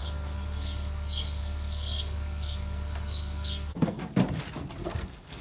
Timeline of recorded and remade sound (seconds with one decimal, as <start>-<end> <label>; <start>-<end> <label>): 0.0-4.0 remade; 4.0-4.8 recorded; 4.8-5.4 remade